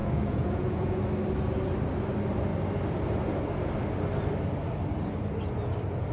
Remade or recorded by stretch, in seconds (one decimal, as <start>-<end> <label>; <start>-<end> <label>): 0.0-1.0 remade; 1.0-6.1 recorded

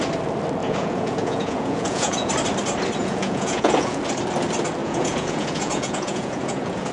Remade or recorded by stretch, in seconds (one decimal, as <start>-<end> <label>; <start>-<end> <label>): 0.0-0.6 recorded; 0.6-2.3 remade; 2.3-3.0 recorded; 3.0-4.0 remade; 4.0-4.8 recorded; 4.8-6.9 remade

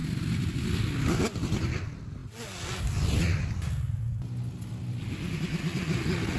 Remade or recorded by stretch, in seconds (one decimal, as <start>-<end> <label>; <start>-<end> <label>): 0.0-6.4 recorded